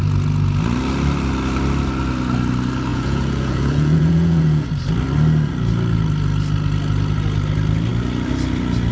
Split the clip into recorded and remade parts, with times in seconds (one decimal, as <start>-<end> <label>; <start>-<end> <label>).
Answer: 0.0-2.9 recorded; 2.9-4.7 remade; 4.7-8.9 recorded